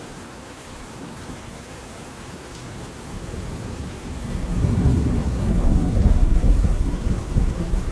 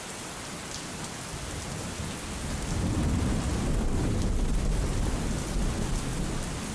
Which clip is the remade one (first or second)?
first